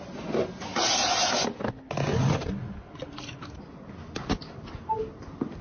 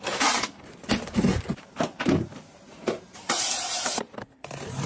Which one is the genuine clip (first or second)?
first